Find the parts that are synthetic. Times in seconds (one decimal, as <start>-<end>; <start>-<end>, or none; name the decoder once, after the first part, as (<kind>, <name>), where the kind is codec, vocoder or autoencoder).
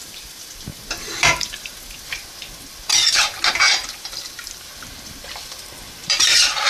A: 0.0-0.7 (vocoder, BigVGAN v2); 4.0-6.7